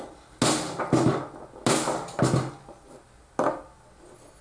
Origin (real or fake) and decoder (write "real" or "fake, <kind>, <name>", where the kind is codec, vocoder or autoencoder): real